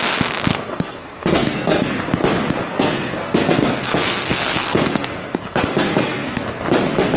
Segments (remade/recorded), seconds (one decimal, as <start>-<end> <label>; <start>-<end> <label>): 0.0-0.5 recorded; 0.5-1.9 remade; 1.9-2.7 recorded; 2.7-6.6 remade; 6.6-7.2 recorded